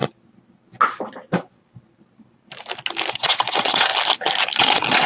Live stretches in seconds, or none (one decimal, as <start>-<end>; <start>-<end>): 0.0-3.1; 3.9-4.6